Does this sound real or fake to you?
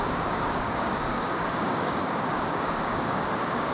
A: fake